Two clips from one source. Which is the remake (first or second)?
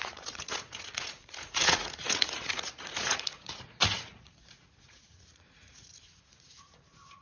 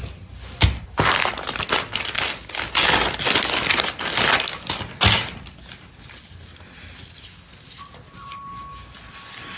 first